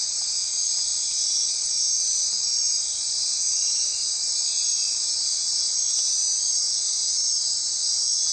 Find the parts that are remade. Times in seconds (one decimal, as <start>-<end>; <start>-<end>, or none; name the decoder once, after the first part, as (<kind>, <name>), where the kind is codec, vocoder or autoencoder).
none